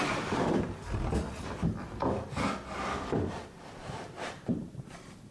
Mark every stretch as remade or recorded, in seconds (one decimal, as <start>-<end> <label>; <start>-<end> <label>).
0.0-0.8 remade; 0.8-3.3 recorded; 3.3-5.3 remade